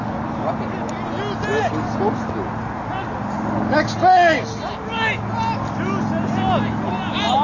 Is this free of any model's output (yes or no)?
yes